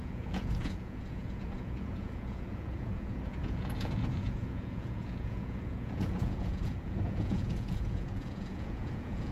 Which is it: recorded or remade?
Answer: remade